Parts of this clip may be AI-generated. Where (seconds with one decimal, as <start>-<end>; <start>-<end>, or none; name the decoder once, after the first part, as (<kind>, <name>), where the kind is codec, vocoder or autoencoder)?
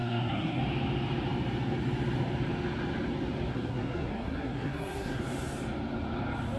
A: 0.0-0.6 (codec, SNAC); 3.5-5.2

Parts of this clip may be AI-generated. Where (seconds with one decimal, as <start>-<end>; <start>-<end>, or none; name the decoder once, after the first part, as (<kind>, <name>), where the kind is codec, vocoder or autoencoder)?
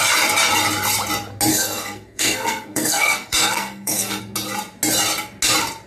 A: 1.5-4.2 (codec, SNAC)